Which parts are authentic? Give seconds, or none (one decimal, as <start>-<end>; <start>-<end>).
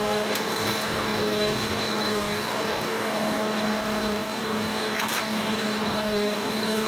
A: none